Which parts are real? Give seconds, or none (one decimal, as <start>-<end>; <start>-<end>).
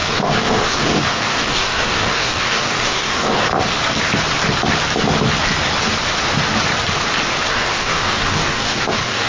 3.5-7.5